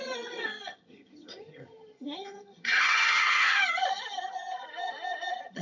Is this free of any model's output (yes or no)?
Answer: no